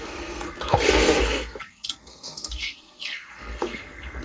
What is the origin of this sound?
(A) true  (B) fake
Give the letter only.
B